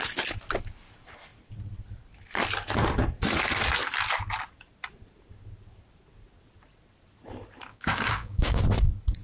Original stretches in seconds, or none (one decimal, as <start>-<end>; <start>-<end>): 0.0-7.7; 8.6-9.2